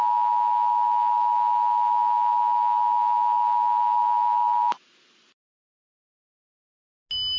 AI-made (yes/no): no